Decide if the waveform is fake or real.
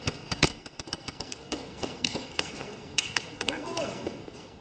fake